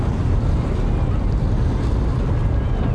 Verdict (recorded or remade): recorded